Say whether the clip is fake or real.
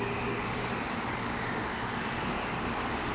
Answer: fake